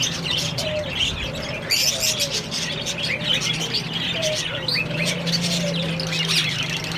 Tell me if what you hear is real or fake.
real